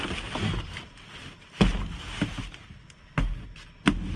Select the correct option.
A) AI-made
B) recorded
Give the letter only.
B